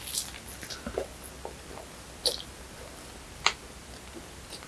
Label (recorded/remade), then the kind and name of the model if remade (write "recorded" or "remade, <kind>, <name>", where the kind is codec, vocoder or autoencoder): recorded